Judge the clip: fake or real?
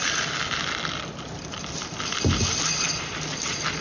real